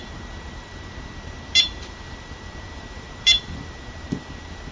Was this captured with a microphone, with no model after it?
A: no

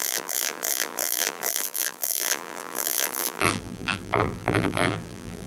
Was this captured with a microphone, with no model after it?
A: no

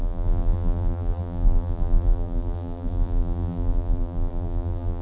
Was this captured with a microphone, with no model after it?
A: no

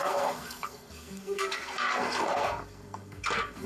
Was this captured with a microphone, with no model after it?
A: no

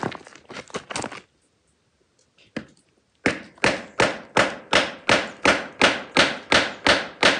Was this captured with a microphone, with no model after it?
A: yes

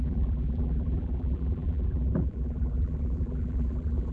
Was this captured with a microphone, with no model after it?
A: no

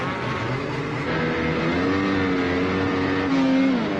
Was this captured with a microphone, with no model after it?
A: yes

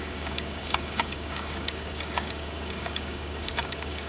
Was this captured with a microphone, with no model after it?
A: no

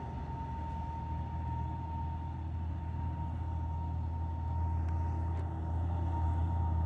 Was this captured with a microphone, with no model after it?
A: yes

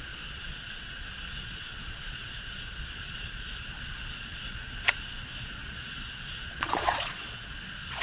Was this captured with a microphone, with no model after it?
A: no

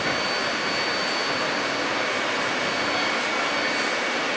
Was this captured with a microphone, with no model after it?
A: yes